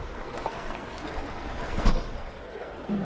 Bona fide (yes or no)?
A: no